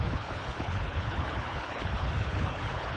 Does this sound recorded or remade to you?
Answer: remade